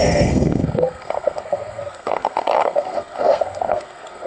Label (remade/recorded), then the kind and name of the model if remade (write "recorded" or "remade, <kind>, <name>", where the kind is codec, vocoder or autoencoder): remade, codec, SNAC